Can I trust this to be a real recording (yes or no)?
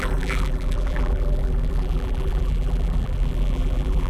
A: no